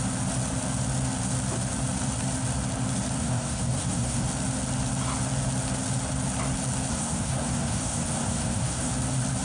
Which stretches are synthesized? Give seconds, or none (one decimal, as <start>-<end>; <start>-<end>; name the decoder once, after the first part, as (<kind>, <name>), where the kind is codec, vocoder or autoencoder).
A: 3.2-4.3 (codec, SNAC); 6.9-8.9